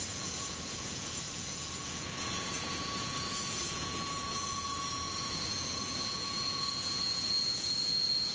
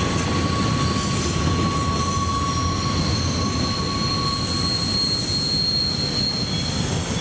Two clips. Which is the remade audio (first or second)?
first